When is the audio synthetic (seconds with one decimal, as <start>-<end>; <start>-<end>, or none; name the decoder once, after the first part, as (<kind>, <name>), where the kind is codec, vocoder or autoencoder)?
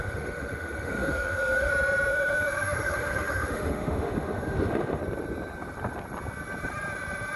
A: 0.0-1.7 (autoencoder, DAC-VAE); 2.1-5.0